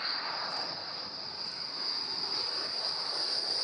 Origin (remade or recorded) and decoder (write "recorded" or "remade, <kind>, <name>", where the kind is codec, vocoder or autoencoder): recorded